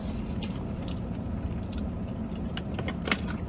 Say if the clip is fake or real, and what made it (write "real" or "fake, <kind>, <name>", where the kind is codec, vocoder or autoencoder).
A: fake, vocoder, BigVGAN v2